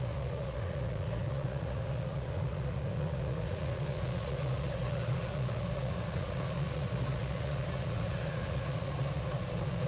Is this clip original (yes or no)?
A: no